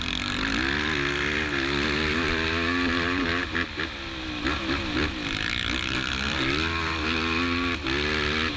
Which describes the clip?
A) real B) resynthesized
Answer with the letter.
A